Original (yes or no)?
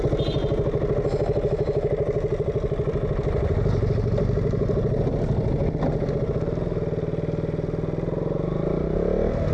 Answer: yes